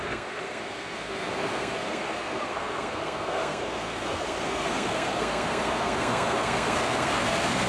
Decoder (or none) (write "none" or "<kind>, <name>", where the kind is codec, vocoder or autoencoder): codec, SNAC